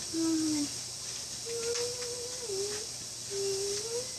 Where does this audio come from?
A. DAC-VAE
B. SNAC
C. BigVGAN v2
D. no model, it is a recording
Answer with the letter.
D